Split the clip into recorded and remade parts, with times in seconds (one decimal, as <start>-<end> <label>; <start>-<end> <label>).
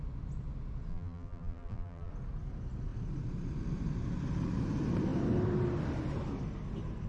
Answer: 0.0-0.9 recorded; 0.9-2.1 remade; 2.1-7.1 recorded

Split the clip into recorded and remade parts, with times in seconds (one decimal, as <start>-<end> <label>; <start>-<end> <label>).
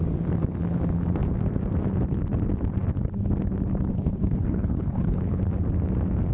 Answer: 0.0-3.9 recorded; 3.9-5.4 remade; 5.4-6.3 recorded